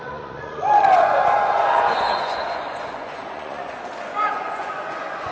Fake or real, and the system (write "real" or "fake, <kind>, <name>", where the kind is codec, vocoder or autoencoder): fake, vocoder, Vocos